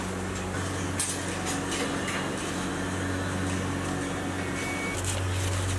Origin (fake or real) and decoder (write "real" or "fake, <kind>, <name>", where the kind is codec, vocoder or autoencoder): real